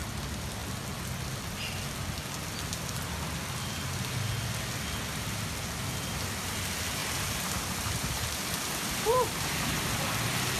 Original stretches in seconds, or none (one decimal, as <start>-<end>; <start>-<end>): 0.0-7.0; 10.0-10.6